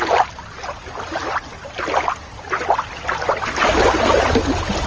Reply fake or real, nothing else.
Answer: real